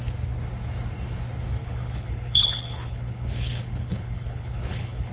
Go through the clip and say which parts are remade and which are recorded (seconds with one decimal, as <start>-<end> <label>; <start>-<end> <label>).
0.0-1.6 recorded; 1.6-5.1 remade